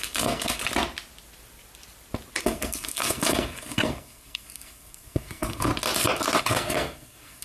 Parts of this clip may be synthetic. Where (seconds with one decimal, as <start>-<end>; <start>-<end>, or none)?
0.0-0.6; 2.4-5.7; 6.4-7.4